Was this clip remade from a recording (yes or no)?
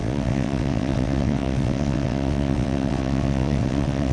yes